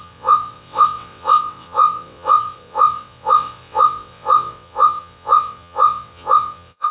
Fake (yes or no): yes